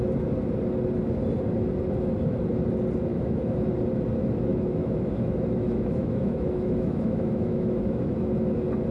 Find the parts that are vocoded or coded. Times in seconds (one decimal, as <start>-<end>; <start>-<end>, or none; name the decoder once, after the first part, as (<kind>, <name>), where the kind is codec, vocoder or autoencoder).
3.1-3.7 (autoencoder, DAC-VAE); 4.5-8.3